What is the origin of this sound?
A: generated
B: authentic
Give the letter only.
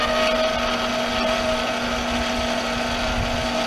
B